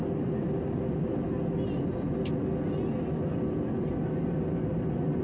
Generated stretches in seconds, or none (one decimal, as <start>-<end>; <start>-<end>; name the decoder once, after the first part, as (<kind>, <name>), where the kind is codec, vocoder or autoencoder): none